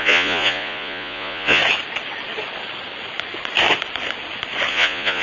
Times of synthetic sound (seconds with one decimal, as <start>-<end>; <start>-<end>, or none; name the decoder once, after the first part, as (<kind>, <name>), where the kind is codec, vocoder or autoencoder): 0.0-1.6 (vocoder, Vocos); 4.7-5.2